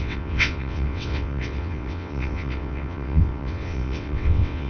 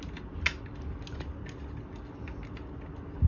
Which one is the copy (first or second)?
first